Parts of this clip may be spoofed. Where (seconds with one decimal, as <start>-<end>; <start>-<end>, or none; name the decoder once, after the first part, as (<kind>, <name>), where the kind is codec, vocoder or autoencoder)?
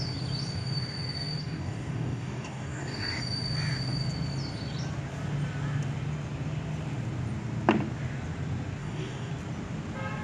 1.4-3.2 (codec, DAC); 8.8-9.3